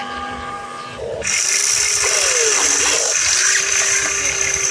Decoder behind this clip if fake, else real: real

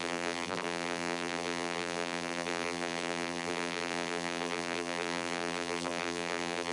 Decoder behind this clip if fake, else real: fake, vocoder, BigVGAN v2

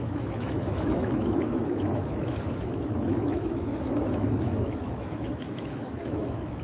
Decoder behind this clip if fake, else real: fake, autoencoder, DAC-VAE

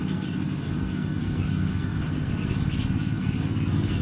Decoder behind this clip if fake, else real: fake, codec, SNAC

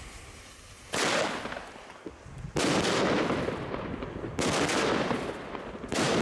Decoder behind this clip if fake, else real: real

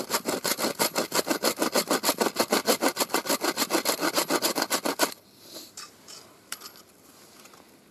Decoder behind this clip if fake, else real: real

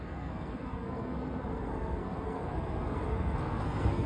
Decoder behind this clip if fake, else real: fake, codec, SNAC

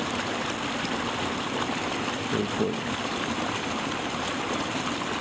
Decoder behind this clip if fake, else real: real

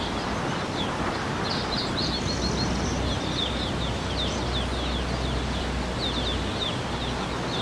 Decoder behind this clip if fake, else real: real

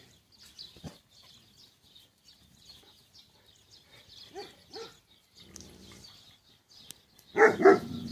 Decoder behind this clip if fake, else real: real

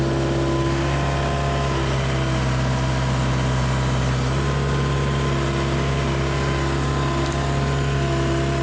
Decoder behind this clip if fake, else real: real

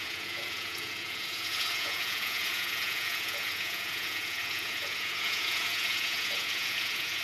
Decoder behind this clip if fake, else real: fake, vocoder, Vocos